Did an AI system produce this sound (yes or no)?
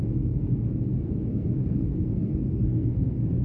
yes